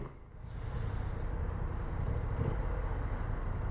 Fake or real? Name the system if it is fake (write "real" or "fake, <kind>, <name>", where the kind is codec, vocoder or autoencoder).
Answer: real